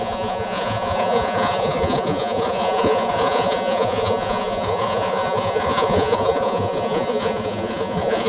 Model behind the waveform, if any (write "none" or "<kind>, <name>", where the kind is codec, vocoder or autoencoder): vocoder, Vocos